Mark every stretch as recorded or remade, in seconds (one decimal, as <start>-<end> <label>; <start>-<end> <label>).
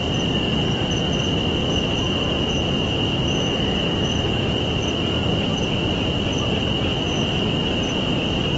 0.0-1.6 recorded; 1.6-4.6 remade; 4.6-6.9 recorded; 6.9-7.4 remade; 7.4-8.6 recorded